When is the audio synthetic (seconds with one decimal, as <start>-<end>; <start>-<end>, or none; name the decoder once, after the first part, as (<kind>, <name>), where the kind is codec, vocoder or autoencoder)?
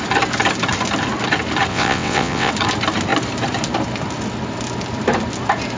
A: 1.7-2.5 (vocoder, WaveNeXt)